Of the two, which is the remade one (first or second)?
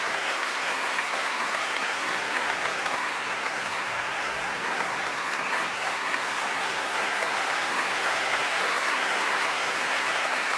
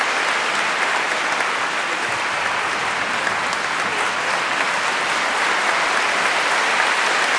first